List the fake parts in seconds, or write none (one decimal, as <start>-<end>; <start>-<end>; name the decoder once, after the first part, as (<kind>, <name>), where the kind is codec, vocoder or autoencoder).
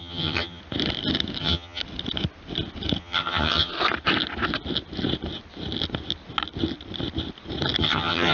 0.0-0.6 (vocoder, HiFi-GAN); 1.4-1.8; 3.0-3.7; 7.8-8.3